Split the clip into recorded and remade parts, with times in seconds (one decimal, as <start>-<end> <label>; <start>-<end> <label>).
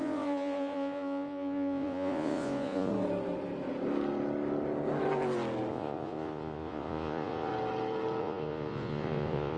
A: 0.0-2.9 remade; 2.9-5.7 recorded; 5.7-7.5 remade; 7.5-8.2 recorded; 8.2-9.6 remade